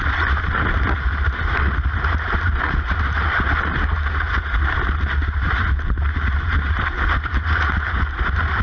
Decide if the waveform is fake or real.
real